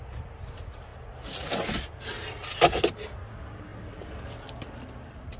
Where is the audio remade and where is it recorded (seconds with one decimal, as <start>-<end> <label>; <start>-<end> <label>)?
0.0-3.7 recorded; 3.7-4.5 remade; 4.5-5.4 recorded